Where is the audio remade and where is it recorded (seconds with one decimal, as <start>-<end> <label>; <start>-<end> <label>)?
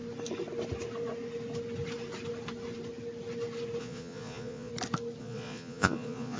0.0-3.8 recorded; 3.8-4.7 remade; 4.7-5.2 recorded; 5.2-6.4 remade